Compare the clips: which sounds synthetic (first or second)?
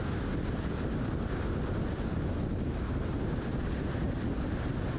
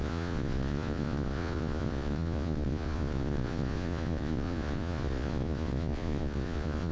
second